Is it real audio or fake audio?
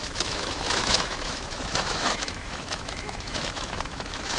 fake